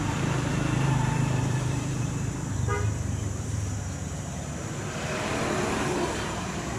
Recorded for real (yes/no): no